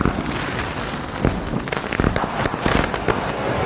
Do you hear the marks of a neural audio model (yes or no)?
no